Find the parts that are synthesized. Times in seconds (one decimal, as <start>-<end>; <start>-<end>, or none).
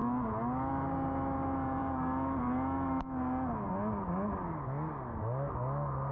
none